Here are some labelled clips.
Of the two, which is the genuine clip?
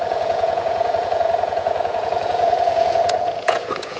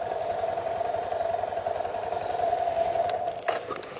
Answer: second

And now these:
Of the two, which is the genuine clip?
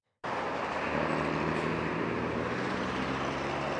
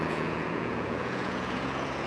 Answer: first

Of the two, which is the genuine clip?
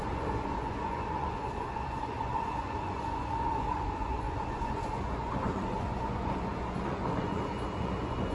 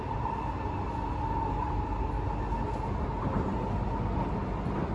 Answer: second